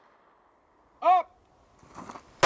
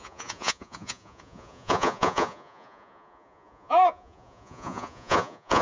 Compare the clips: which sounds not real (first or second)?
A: second